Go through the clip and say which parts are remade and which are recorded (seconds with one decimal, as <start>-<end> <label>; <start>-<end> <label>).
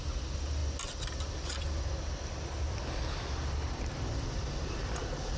0.0-5.4 recorded